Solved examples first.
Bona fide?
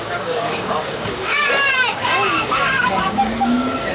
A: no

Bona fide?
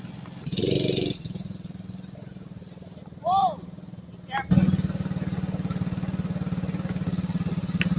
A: yes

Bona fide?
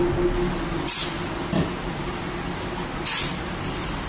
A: yes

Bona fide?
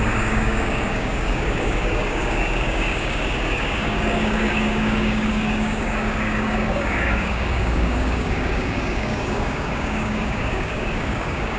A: no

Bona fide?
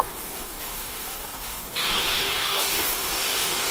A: no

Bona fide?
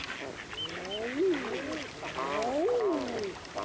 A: yes